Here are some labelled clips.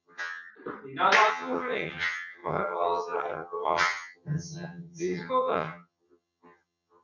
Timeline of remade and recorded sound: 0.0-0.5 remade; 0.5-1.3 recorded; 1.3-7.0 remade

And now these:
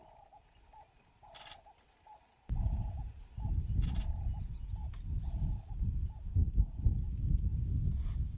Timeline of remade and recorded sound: 0.0-8.4 recorded

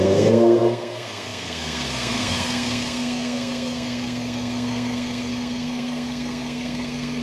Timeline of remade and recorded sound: 0.0-7.2 remade

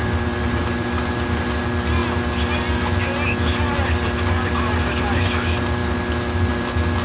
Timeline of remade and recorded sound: 0.0-1.6 remade; 1.6-7.0 recorded

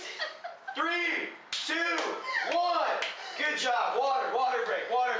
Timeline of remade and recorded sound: 0.0-5.2 recorded

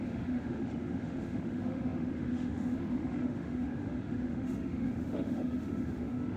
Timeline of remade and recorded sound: 0.0-6.4 remade